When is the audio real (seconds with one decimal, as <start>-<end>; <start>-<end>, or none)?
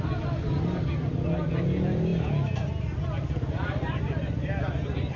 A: 0.0-5.2